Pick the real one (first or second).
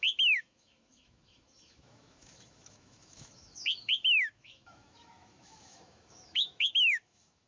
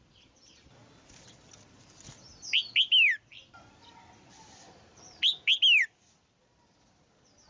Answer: second